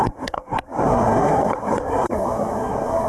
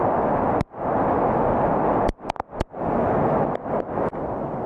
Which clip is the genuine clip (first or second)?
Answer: second